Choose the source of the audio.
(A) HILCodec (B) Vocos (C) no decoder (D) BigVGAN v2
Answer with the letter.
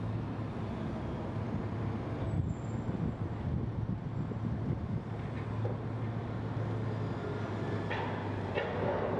C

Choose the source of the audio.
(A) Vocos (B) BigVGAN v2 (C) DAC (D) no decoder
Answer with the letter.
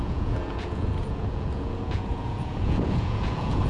A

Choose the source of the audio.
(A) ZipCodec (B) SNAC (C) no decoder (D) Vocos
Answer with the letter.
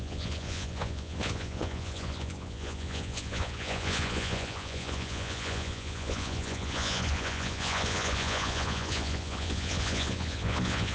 D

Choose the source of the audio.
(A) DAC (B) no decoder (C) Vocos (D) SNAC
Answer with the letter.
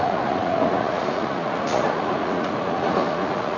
C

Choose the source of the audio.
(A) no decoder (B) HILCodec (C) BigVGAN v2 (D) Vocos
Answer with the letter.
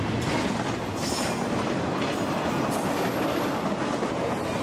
A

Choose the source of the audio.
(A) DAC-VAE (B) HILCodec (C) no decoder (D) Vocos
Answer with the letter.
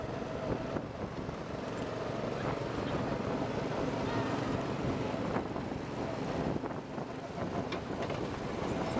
C